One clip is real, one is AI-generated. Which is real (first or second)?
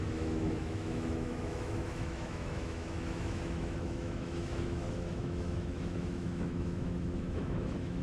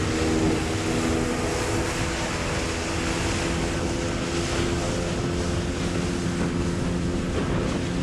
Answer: second